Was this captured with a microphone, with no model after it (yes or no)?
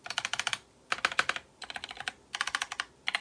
yes